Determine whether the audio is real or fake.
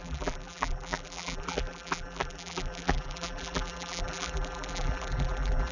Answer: fake